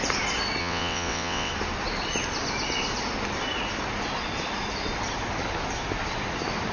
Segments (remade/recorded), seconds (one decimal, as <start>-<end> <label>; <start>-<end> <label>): 0.0-0.6 recorded; 0.6-1.5 remade; 1.5-6.7 recorded